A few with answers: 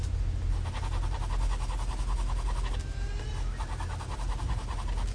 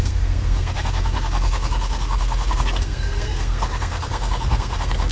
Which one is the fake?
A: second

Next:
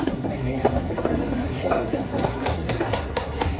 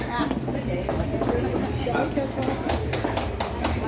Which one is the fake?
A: first